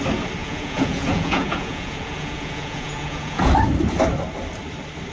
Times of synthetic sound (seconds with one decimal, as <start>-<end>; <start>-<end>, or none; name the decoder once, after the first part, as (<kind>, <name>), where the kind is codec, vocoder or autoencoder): 0.4-3.5 (vocoder, Vocos)